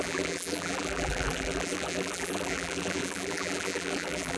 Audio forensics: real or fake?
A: fake